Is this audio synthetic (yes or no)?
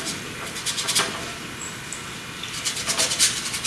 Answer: no